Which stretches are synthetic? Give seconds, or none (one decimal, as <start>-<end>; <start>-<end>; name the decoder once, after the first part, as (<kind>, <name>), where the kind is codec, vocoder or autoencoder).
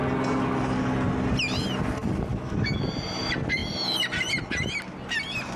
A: 2.3-2.8 (autoencoder, DAC-VAE)